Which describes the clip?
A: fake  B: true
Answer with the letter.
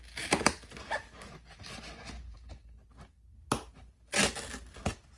B